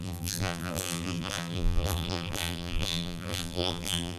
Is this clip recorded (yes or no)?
no